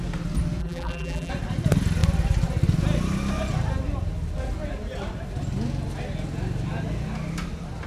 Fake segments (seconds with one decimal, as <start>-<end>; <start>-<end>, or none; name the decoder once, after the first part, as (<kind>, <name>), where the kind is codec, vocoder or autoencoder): 0.6-1.3 (vocoder, BigVGAN v2)